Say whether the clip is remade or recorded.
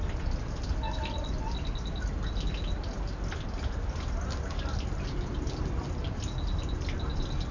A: recorded